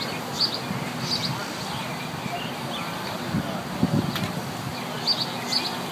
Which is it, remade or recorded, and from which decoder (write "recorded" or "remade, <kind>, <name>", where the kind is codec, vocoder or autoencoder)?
recorded